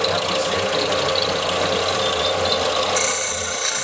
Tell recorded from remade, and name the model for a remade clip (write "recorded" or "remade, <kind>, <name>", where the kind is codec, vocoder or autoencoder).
recorded